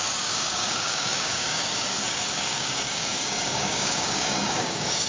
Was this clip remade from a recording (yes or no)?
yes